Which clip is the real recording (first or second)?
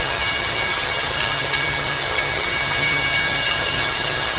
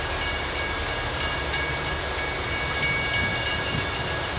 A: second